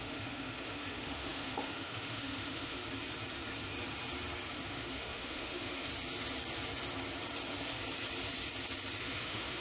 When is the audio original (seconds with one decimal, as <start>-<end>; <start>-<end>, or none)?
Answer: 2.8-4.7; 5.9-9.0